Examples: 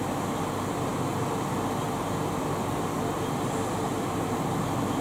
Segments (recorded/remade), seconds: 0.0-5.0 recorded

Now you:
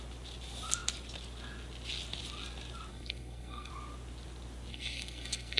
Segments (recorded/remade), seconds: 0.0-2.9 recorded; 2.9-3.7 remade; 3.7-4.7 recorded; 4.7-5.6 remade

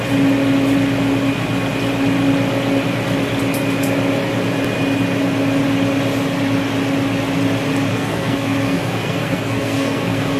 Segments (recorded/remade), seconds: 0.0-7.9 recorded; 7.9-10.4 remade

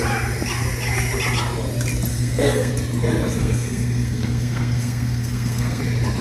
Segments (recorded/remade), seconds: 0.0-2.1 recorded; 2.1-2.7 remade; 2.7-3.4 recorded; 3.4-5.8 remade; 5.8-6.2 recorded

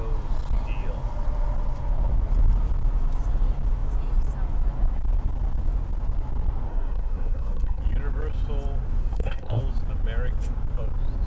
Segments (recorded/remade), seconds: 0.0-6.7 recorded; 6.7-7.8 remade; 7.8-9.0 recorded; 9.0-9.6 remade; 9.6-11.3 recorded

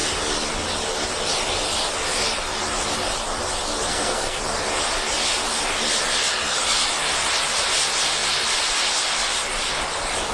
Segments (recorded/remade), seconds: 0.0-3.9 recorded; 3.9-4.4 remade; 4.4-10.3 recorded

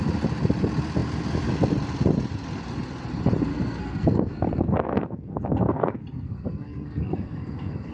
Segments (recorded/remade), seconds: 0.0-3.5 recorded; 3.5-7.9 remade